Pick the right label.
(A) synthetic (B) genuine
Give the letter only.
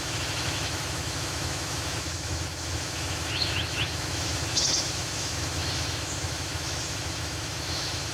A